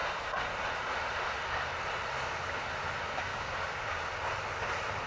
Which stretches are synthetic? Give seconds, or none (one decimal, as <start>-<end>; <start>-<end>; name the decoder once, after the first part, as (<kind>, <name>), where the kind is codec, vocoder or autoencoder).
3.3-4.0 (codec, DAC)